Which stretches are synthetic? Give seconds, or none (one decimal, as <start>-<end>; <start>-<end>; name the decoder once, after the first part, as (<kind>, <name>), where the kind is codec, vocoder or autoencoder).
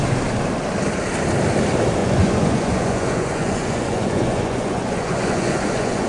2.0-6.1 (vocoder, Vocos)